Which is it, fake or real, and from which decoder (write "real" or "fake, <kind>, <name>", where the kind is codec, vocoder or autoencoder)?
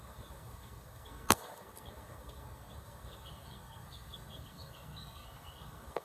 fake, codec, SNAC